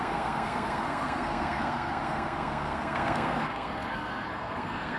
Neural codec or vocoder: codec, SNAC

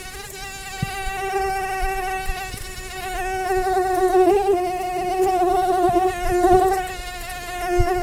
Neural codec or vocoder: none